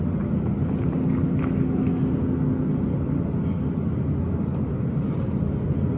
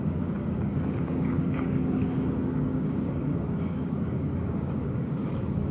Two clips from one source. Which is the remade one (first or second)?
second